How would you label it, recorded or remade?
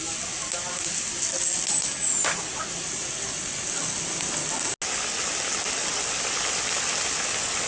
recorded